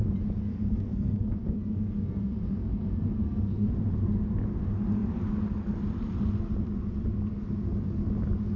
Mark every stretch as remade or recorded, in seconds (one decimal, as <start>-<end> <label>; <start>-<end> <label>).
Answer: 0.0-0.5 recorded; 0.5-3.7 remade; 3.7-8.6 recorded